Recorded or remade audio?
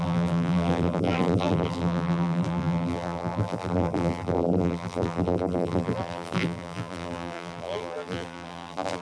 remade